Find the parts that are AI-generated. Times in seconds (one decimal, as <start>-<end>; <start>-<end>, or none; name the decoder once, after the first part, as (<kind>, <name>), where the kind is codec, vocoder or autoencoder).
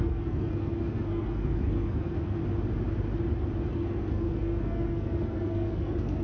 0.0-2.4 (codec, SNAC); 3.7-6.2